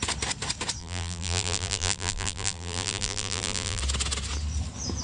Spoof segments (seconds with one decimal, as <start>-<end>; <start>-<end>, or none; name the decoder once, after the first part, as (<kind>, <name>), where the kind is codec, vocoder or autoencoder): 0.8-3.8 (vocoder, BigVGAN v2)

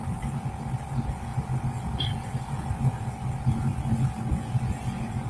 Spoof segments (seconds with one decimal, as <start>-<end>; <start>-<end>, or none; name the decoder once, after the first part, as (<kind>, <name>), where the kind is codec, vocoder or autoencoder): none